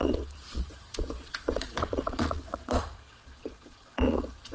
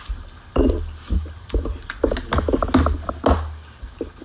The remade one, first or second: first